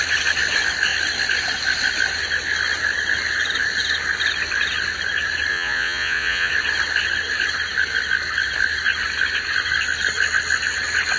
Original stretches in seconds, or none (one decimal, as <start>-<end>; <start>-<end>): 0.0-5.5; 6.5-11.2